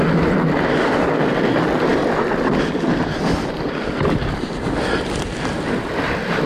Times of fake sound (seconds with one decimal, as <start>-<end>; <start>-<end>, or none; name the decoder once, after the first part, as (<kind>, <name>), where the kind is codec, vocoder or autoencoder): none